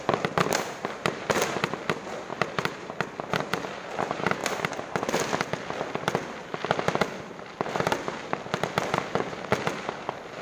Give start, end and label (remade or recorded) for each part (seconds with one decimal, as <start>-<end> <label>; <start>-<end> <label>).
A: 0.0-2.3 recorded; 2.3-2.9 remade; 2.9-10.4 recorded